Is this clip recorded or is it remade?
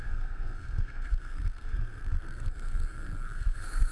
remade